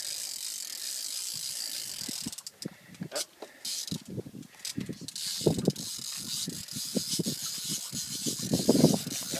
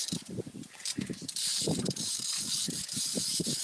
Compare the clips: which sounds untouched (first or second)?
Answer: first